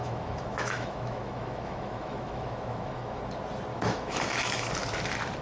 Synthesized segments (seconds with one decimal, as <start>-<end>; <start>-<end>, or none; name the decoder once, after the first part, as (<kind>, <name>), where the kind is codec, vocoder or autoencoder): 0.0-3.2 (autoencoder, DAC-VAE); 3.7-4.7